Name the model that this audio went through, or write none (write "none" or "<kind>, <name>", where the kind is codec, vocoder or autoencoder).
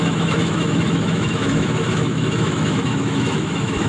autoencoder, DAC-VAE